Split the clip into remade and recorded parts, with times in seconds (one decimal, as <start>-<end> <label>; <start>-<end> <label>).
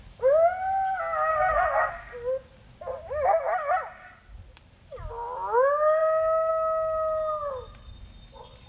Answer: 0.0-1.3 recorded; 1.3-1.9 remade; 1.9-8.7 recorded